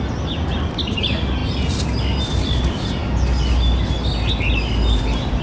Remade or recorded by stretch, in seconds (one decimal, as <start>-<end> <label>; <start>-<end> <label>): 0.0-1.4 remade; 1.4-2.2 recorded; 2.2-3.0 remade; 3.0-5.0 recorded; 5.0-5.4 remade